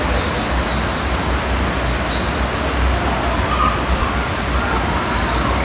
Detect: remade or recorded recorded